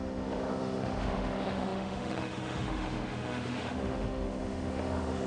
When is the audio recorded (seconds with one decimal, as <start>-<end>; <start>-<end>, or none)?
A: none